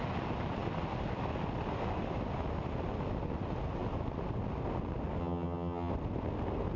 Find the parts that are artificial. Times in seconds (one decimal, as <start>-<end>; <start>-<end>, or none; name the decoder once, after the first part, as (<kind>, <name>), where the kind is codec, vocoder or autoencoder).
5.2-5.9 (vocoder, HiFi-GAN)